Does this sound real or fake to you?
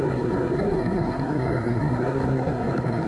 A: fake